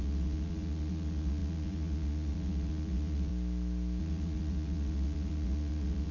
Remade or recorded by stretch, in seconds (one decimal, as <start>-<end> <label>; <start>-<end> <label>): 0.0-3.3 remade; 3.3-4.0 recorded; 4.0-6.1 remade